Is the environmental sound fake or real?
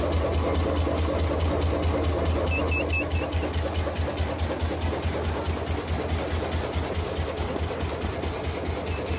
real